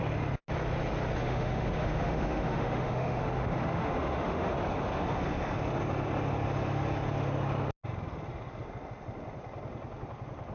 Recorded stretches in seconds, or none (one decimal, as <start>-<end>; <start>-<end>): 0.0-1.2; 4.5-10.5